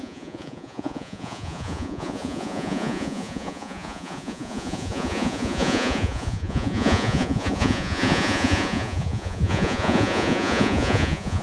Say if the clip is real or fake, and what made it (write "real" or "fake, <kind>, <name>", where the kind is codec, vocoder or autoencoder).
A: fake, vocoder, Vocos